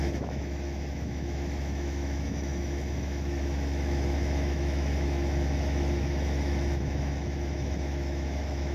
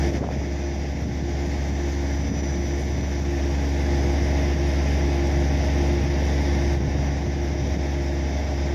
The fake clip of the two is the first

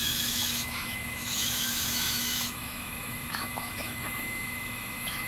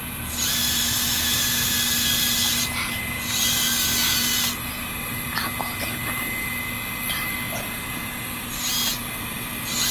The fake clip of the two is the first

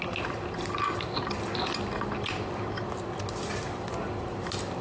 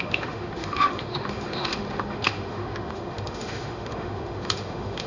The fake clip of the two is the second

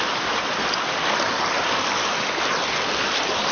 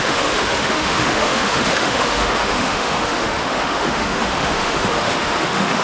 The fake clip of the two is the second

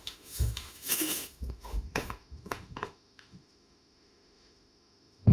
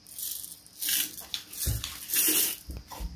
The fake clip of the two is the first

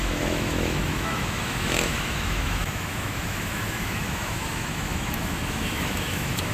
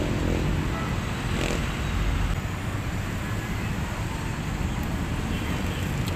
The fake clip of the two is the first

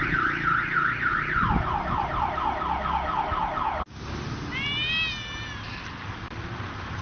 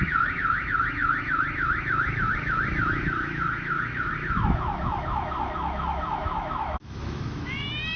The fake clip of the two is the second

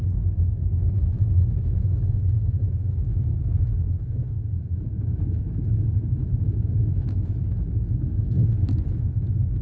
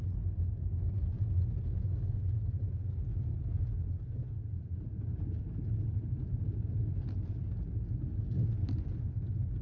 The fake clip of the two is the first